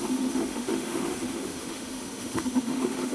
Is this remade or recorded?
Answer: remade